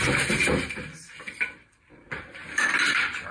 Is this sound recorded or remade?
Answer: remade